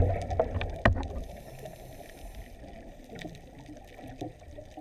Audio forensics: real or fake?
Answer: real